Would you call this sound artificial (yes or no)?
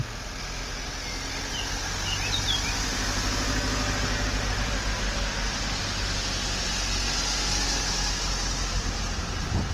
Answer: no